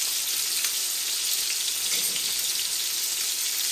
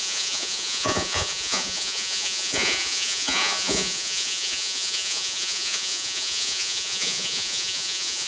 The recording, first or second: first